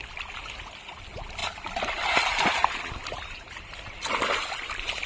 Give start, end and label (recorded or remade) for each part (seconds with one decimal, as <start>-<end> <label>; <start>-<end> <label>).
0.0-5.1 recorded